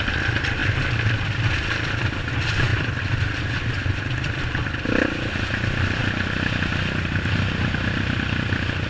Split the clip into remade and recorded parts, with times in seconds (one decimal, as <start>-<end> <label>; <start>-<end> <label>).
0.0-6.0 remade; 6.0-8.9 recorded